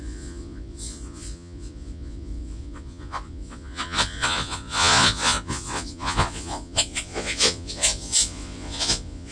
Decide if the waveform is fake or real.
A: fake